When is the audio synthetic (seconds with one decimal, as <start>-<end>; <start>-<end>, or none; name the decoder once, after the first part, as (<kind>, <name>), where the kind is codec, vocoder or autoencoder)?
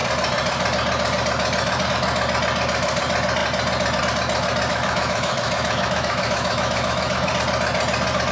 4.7-7.3 (autoencoder, DAC-VAE)